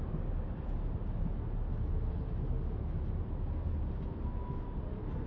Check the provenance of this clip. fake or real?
real